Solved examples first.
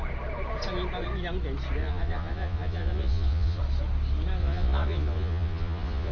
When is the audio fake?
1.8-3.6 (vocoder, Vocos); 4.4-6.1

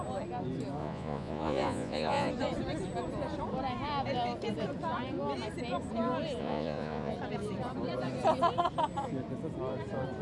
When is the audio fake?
0.8-2.3 (vocoder, Vocos); 6.4-7.1

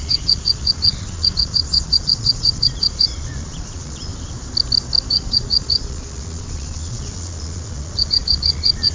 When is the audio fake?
0.0-4.1 (vocoder, Vocos); 5.1-8.9

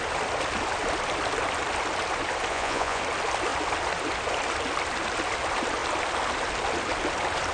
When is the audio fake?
2.5-3.0 (vocoder, Vocos)

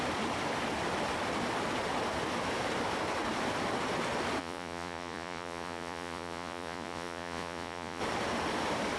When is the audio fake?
4.4-8.0 (vocoder, Vocos)

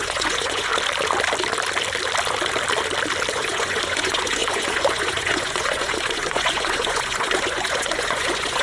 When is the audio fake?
0.0-0.7 (vocoder, Vocos); 3.3-8.6